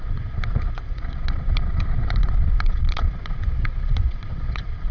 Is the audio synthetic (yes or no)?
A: yes